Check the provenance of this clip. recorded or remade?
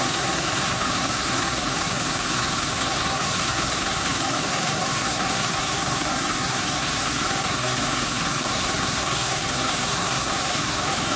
remade